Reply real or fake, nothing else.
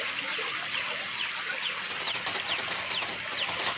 real